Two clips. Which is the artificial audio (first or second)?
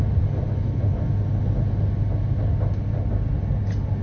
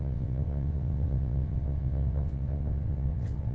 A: second